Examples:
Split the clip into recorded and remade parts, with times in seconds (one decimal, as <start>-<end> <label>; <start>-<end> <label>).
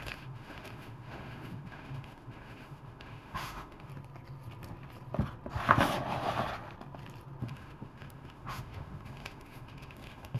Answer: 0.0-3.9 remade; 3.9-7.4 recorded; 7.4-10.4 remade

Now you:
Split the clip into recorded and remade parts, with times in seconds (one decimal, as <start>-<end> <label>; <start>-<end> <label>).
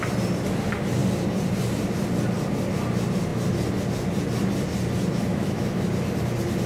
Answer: 0.0-5.3 recorded; 5.3-5.9 remade; 5.9-6.7 recorded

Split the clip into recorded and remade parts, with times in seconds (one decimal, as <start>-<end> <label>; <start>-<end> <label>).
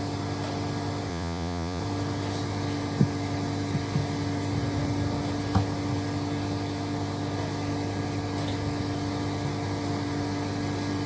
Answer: 0.0-1.1 recorded; 1.1-1.8 remade; 1.8-11.1 recorded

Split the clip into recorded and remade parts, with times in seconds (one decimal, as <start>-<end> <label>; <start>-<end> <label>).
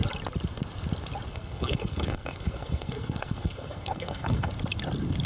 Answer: 0.0-1.3 recorded; 1.3-4.5 remade; 4.5-5.3 recorded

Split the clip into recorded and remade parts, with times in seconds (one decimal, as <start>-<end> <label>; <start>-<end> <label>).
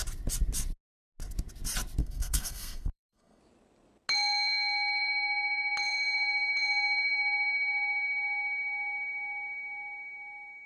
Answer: 0.0-2.0 recorded; 2.0-3.4 remade; 3.4-10.7 recorded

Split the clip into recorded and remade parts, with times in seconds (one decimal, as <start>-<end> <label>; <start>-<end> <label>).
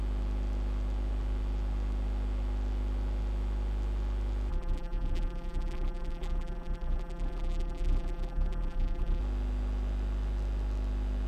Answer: 0.0-4.5 recorded; 4.5-9.2 remade; 9.2-11.3 recorded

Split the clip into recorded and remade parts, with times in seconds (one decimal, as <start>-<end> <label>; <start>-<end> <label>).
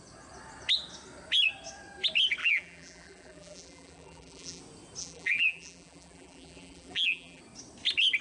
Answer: 0.0-2.4 recorded; 2.4-4.6 remade; 4.6-5.0 recorded; 5.0-7.4 remade; 7.4-8.2 recorded